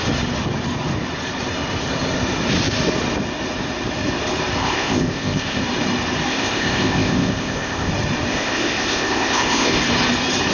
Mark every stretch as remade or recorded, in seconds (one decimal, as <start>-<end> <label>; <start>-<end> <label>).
0.0-4.6 recorded; 4.6-5.6 remade; 5.6-6.3 recorded; 6.3-7.9 remade; 7.9-8.3 recorded; 8.3-9.8 remade; 9.8-10.5 recorded